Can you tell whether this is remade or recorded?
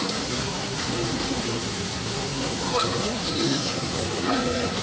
remade